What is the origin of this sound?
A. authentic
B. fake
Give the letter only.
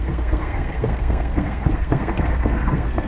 B